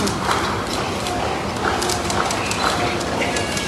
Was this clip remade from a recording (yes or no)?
no